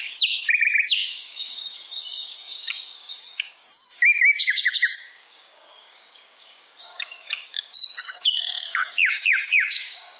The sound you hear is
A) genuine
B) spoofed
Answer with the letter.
B